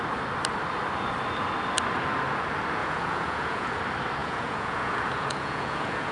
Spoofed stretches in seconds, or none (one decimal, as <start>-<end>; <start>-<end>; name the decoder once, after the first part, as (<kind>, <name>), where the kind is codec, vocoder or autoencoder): 2.8-3.8 (vocoder, Vocos); 4.2-6.1